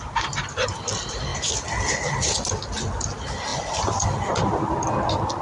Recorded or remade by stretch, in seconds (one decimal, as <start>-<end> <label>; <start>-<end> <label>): 0.0-5.4 recorded